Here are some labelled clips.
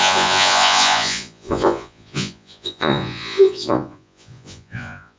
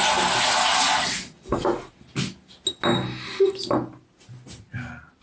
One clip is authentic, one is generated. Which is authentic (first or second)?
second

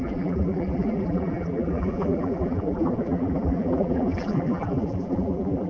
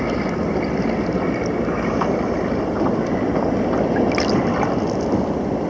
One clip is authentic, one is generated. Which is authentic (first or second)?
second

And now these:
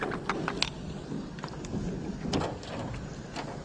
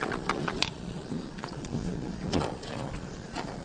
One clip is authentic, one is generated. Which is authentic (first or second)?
first